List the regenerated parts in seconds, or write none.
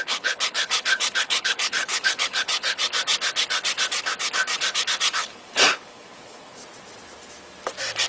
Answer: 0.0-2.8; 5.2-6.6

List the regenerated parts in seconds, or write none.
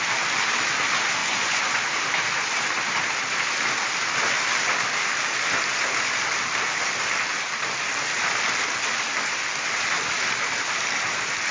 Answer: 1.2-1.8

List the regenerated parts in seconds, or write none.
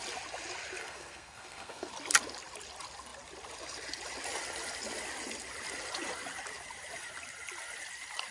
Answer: 0.8-1.9